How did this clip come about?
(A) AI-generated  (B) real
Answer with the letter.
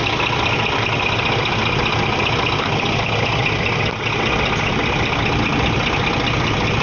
B